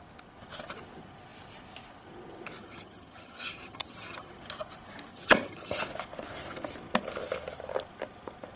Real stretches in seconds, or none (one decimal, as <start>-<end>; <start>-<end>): 0.0-2.6; 4.3-5.1; 5.8-8.6